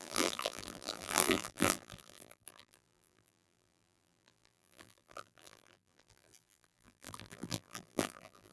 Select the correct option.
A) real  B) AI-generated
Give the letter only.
B